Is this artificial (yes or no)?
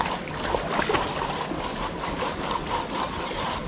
no